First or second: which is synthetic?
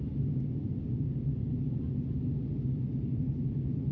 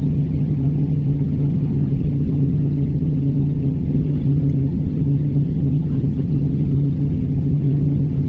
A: second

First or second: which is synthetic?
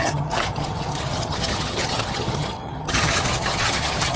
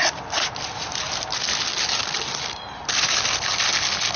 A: first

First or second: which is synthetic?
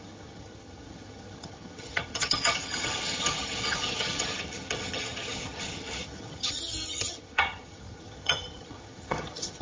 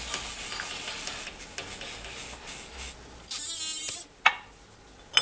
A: first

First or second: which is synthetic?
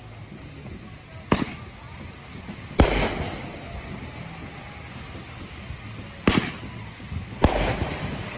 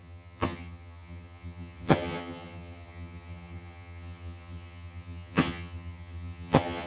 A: second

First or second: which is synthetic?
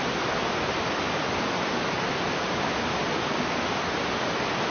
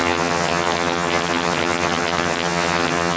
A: second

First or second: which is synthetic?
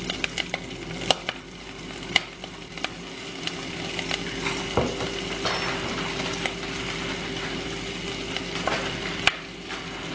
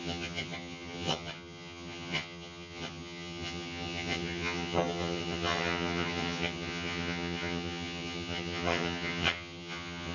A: second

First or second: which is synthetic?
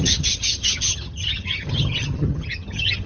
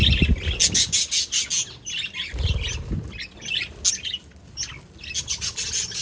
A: first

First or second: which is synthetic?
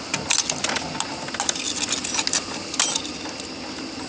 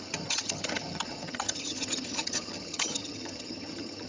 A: second